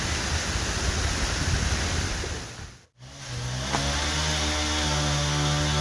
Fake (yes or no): no